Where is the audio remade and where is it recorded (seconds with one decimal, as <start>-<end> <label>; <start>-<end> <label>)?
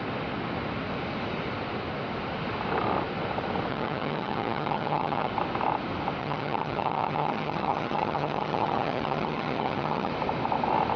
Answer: 0.0-3.7 recorded; 3.7-5.3 remade; 5.3-6.2 recorded; 6.2-10.1 remade; 10.1-11.0 recorded